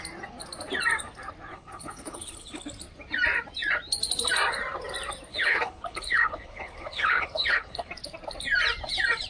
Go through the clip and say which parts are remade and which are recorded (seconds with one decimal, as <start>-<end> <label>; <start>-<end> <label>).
0.0-1.5 recorded; 1.5-2.6 remade; 2.6-5.3 recorded; 5.3-7.9 remade; 7.9-9.3 recorded